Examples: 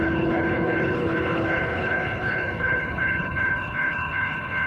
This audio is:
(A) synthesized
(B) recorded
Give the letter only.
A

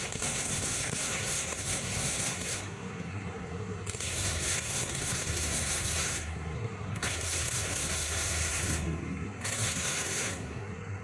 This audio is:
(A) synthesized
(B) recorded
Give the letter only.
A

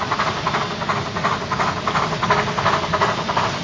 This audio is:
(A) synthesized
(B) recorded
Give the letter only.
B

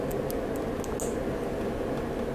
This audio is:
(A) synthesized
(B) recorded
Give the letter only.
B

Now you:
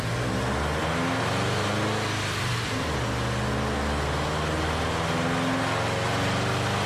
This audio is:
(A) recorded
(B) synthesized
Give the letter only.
A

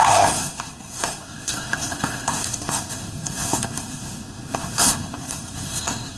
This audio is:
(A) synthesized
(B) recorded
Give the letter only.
A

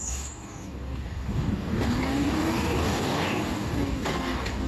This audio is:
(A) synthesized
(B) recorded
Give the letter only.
A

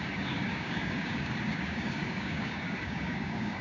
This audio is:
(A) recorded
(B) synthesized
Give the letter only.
B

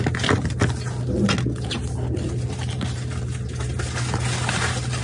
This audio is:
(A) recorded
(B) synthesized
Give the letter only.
A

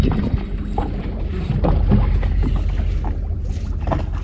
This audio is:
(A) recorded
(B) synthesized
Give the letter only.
A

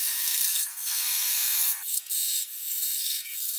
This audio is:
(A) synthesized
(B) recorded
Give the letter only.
A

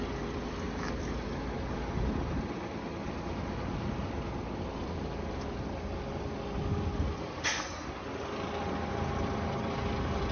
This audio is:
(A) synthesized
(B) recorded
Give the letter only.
B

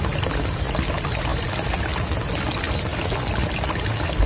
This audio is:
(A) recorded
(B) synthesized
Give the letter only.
A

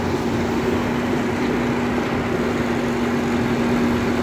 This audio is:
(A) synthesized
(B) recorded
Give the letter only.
B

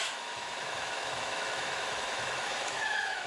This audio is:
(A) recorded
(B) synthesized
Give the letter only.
B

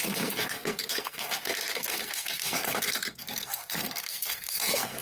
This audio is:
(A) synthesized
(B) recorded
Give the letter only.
A